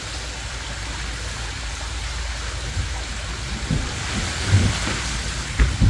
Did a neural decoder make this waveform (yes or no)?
no